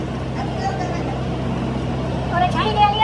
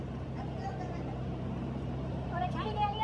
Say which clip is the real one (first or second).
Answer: first